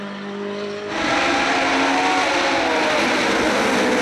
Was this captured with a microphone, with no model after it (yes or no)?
yes